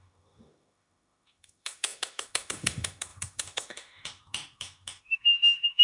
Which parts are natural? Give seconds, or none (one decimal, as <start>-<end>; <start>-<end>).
none